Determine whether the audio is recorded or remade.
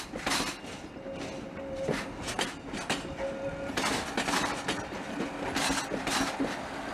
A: recorded